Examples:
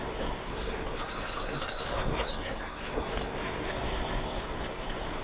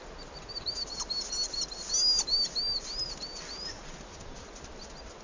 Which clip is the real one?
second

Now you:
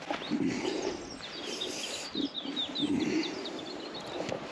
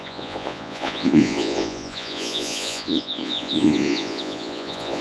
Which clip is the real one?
first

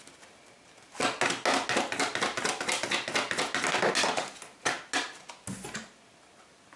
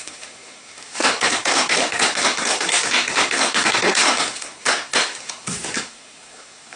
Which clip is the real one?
first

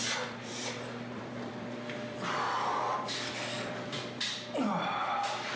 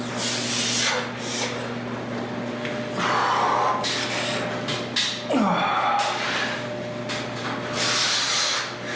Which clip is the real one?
second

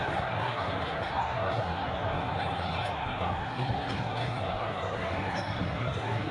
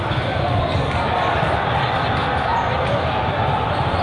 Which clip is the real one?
second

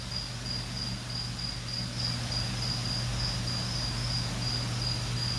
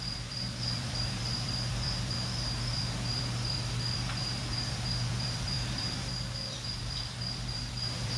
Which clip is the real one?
first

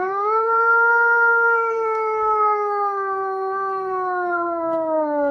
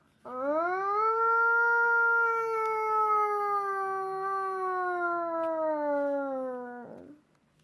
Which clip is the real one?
second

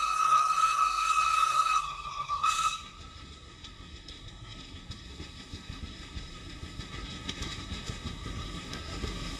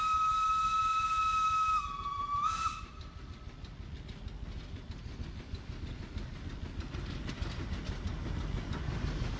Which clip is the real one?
second